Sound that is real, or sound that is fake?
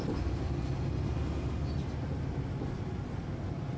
real